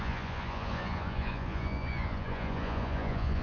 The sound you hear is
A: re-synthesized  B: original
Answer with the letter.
A